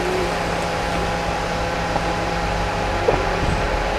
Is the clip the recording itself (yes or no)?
yes